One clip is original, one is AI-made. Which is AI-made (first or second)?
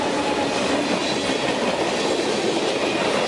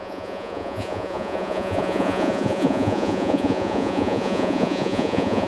second